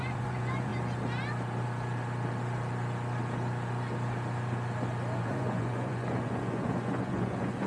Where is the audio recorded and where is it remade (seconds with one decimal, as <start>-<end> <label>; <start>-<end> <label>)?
0.0-0.7 remade; 0.7-5.2 recorded; 5.2-7.7 remade